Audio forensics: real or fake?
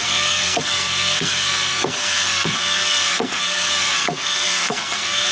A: fake